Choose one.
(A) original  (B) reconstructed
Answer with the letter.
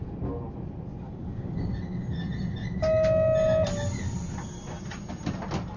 A